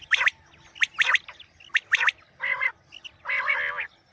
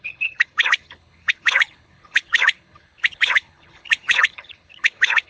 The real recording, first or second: first